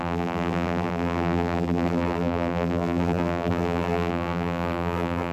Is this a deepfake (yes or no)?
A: yes